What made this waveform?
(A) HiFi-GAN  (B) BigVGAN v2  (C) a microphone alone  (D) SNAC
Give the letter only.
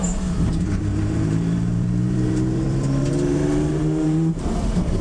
B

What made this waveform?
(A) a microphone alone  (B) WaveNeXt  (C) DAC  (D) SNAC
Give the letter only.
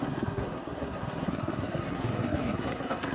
D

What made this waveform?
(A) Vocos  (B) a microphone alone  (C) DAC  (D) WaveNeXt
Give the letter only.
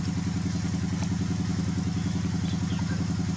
B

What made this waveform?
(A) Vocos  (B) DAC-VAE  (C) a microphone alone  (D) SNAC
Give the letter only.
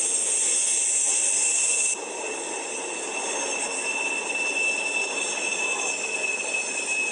C